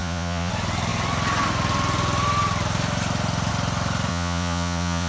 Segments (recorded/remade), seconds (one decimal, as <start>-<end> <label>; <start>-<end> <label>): 0.0-0.5 remade; 0.5-4.1 recorded; 4.1-5.1 remade